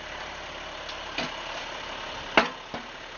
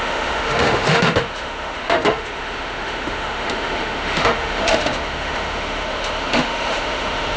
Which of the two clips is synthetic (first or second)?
second